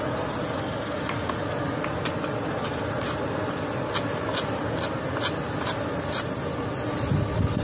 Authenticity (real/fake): real